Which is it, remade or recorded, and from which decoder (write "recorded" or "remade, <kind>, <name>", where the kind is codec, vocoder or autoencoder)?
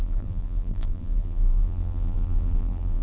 remade, vocoder, BigVGAN v2